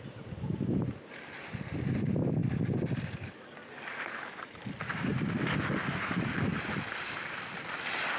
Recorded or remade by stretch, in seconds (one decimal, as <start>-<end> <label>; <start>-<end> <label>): 0.0-5.1 remade; 5.1-5.9 recorded; 5.9-6.5 remade; 6.5-7.0 recorded; 7.0-8.2 remade